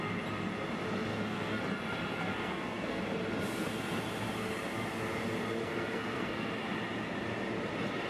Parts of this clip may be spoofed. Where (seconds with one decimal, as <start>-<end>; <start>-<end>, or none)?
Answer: 1.1-1.6; 2.3-3.0; 5.6-6.5